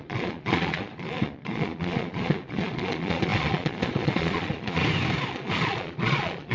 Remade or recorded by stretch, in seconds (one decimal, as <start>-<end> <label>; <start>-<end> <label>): 0.0-4.8 remade; 4.8-5.3 recorded; 5.3-6.5 remade